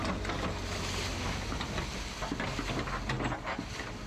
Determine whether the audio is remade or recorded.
recorded